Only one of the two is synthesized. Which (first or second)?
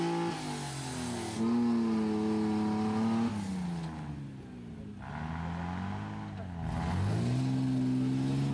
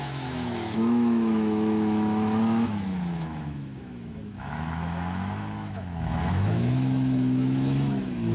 second